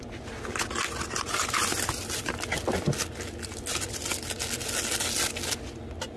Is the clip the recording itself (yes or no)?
yes